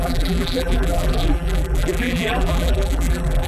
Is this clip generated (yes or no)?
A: yes